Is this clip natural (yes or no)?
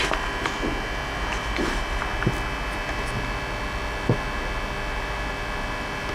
yes